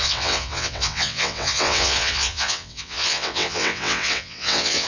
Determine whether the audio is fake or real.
fake